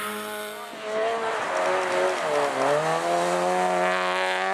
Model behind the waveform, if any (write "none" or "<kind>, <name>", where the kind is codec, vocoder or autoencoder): none